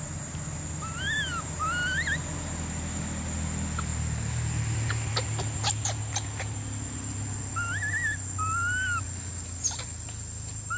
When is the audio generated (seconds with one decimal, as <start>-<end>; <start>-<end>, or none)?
none